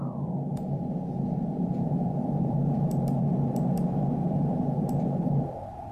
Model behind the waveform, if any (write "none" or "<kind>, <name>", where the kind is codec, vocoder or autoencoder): vocoder, BigVGAN v2